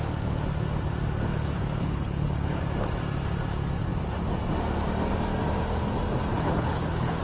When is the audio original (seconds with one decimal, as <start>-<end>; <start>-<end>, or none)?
0.0-1.3; 2.6-6.3